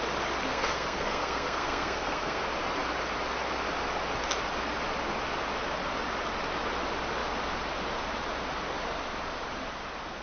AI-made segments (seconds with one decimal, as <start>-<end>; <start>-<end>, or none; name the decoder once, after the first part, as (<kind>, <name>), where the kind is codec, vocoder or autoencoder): 0.5-2.4 (codec, SNAC)